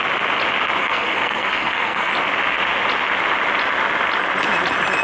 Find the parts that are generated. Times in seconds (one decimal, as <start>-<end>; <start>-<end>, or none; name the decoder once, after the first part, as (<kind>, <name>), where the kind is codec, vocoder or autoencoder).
0.8-2.1 (codec, SNAC)